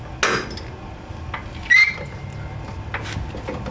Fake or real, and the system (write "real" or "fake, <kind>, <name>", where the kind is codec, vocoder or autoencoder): real